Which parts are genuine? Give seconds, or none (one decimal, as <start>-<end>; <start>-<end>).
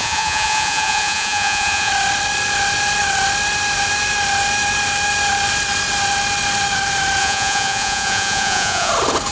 1.9-7.2; 8.9-9.3